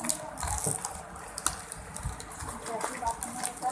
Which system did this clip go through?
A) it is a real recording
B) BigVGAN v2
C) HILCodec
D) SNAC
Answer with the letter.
A